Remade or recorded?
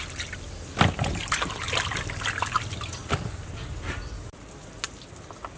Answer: recorded